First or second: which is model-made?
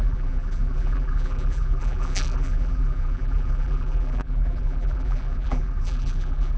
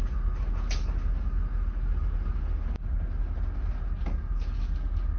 first